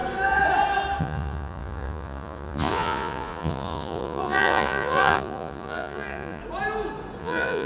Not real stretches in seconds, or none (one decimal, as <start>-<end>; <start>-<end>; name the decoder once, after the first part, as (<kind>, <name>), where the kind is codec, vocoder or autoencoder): 1.0-6.4 (vocoder, Vocos); 7.2-7.7